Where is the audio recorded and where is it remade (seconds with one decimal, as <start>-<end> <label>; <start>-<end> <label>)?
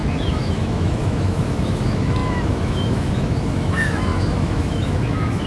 0.0-5.5 remade